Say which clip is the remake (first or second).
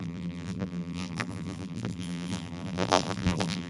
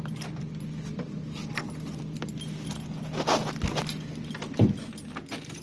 first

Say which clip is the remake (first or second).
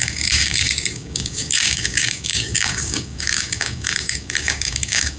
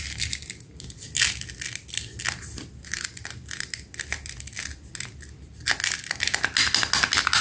first